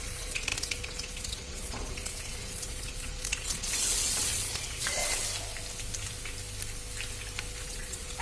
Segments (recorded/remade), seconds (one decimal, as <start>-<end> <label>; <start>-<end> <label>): 0.0-5.0 remade; 5.0-7.6 recorded; 7.6-8.2 remade